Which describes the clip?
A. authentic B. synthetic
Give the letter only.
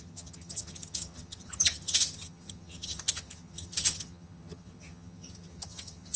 B